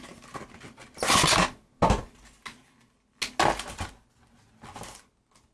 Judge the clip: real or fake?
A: real